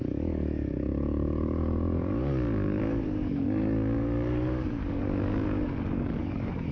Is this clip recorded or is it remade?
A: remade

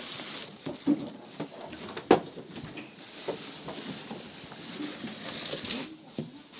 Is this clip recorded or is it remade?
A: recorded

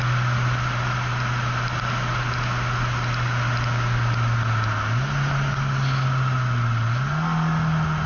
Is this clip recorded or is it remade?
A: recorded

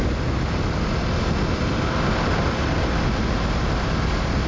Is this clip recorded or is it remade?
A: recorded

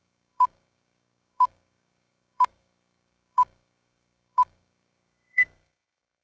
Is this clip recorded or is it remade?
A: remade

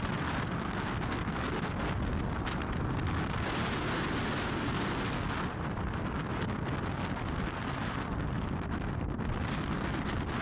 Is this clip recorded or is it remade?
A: recorded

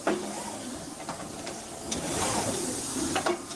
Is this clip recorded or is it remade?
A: recorded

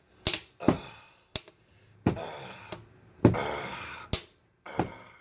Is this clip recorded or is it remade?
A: recorded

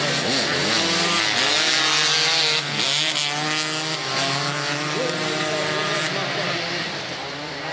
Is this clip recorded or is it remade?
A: recorded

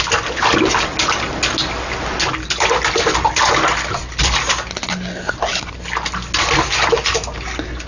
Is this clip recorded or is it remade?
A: recorded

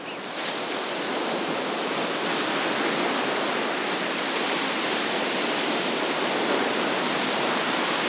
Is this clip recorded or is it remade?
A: recorded